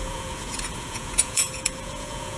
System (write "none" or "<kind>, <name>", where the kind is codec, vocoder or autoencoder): vocoder, Vocos